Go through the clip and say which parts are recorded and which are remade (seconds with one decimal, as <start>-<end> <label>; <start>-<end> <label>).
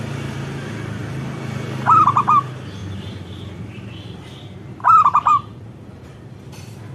0.0-2.8 recorded; 2.8-6.2 remade; 6.2-6.9 recorded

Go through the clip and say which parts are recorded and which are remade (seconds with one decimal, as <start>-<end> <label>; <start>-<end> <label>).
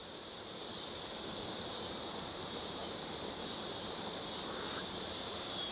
0.0-0.7 recorded; 0.7-2.8 remade; 2.8-4.7 recorded; 4.7-5.7 remade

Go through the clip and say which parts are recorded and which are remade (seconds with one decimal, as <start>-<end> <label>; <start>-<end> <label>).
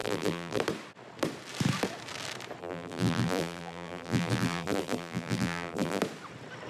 0.0-0.6 remade; 0.6-2.6 recorded; 2.6-6.0 remade; 6.0-6.7 recorded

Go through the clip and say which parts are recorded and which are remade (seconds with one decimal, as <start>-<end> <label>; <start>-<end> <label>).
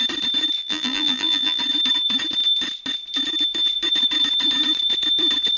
0.0-0.6 recorded; 0.6-1.6 remade; 1.6-5.6 recorded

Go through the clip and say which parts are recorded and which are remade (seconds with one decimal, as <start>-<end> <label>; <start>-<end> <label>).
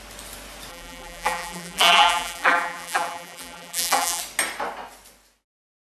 0.0-0.7 recorded; 0.7-4.2 remade; 4.2-5.8 recorded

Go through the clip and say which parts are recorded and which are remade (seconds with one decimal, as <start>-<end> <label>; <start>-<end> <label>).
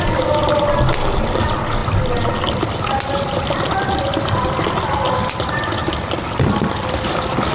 0.0-7.5 recorded